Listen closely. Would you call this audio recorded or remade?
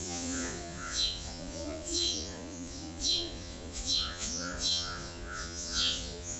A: remade